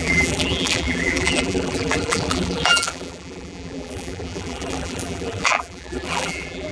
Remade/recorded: remade